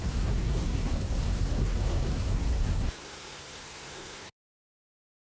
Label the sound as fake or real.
fake